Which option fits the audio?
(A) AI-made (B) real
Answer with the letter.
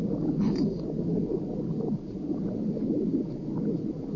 B